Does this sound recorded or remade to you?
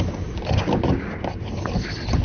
recorded